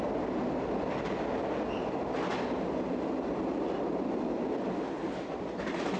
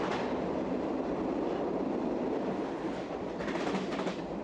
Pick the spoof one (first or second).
second